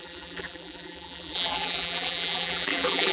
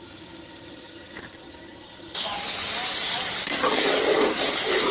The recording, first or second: second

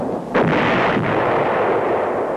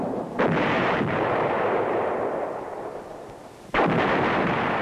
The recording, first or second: first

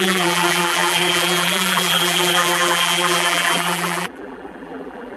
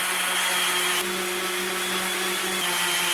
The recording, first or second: second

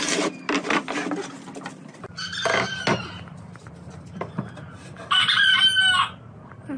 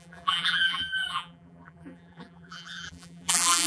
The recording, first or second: first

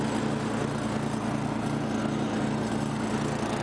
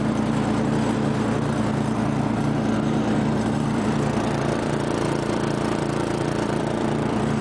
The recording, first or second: first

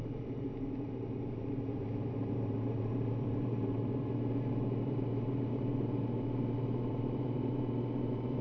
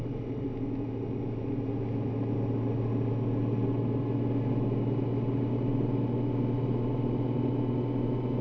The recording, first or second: second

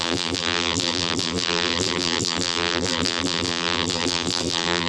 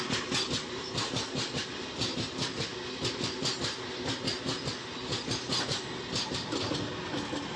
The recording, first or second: second